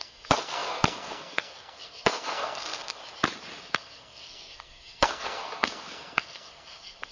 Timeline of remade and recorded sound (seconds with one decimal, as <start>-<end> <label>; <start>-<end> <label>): 0.0-3.0 remade; 3.0-3.6 recorded; 3.6-7.1 remade